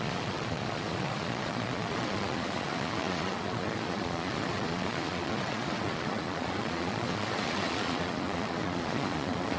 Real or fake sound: fake